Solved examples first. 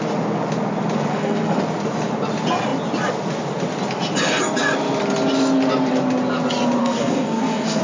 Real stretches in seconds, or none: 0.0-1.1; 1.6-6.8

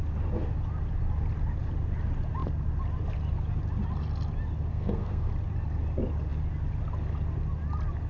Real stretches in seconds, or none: 0.0-4.7; 5.3-8.1

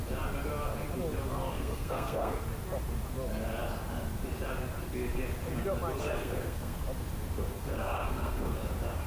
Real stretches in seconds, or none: 0.0-1.5; 2.4-6.0; 6.8-7.5; 8.6-9.1

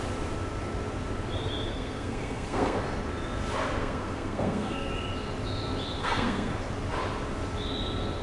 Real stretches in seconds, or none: 0.0-1.7; 2.8-3.8; 4.9-6.0; 6.5-8.2

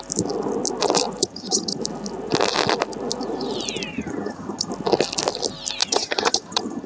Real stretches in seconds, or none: 0.0-1.2; 1.8-3.9; 4.7-5.8

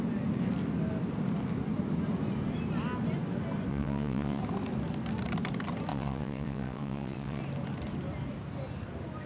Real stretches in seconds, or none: 0.0-3.7; 4.4-5.9; 7.4-9.3

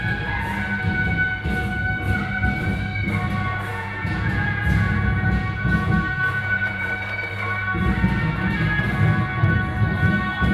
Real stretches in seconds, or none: 0.0-3.7; 6.9-10.5